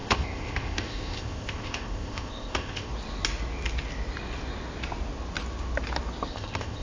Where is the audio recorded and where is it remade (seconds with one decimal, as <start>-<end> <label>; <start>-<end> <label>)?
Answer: 0.0-2.9 remade; 2.9-6.3 recorded; 6.3-6.8 remade